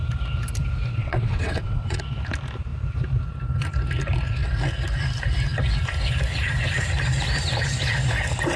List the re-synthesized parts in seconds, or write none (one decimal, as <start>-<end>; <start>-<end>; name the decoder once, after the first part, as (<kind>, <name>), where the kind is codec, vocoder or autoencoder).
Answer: 1.0-2.0 (vocoder, WaveNeXt)